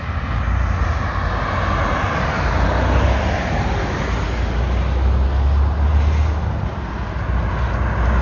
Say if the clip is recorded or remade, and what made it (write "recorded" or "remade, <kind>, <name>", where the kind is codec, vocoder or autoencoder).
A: recorded